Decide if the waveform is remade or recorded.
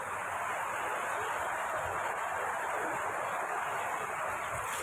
recorded